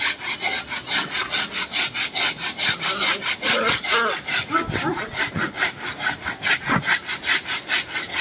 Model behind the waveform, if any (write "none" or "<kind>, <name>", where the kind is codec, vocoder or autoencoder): none